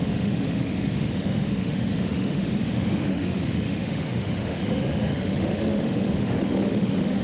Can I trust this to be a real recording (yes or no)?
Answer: no